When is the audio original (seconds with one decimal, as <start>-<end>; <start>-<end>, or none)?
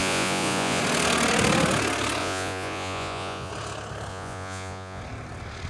0.8-2.2; 3.5-4.1; 5.0-5.7